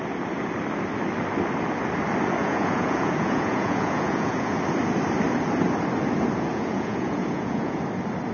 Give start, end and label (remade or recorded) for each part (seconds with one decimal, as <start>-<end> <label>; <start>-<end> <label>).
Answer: 0.0-2.4 recorded; 2.4-4.6 remade; 4.6-6.5 recorded; 6.5-7.8 remade; 7.8-8.3 recorded